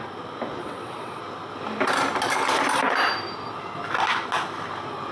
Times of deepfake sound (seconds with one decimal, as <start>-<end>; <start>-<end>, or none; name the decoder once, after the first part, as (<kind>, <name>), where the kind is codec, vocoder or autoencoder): 0.6-1.2 (vocoder, WaveNeXt)